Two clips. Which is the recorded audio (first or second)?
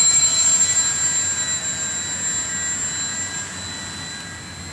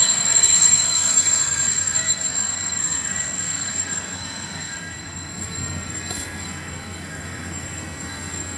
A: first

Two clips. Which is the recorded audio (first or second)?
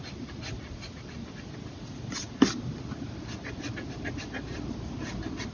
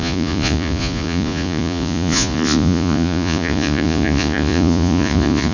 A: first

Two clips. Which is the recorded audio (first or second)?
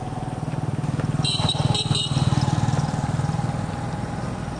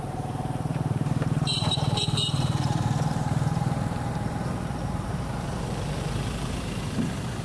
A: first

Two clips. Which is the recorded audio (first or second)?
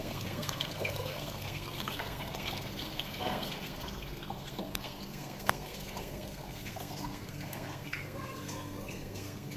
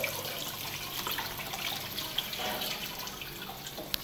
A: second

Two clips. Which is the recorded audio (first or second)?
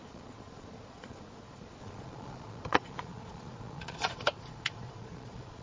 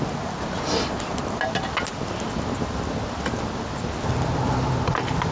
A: second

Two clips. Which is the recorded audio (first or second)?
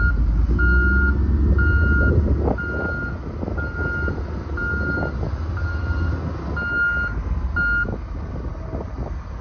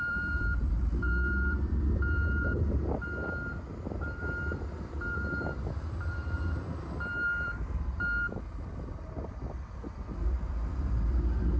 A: first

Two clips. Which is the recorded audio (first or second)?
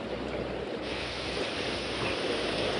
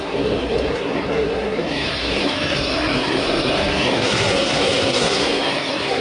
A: first